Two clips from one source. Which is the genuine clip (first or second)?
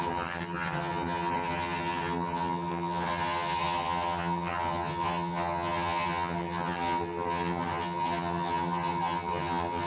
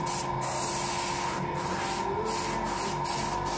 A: second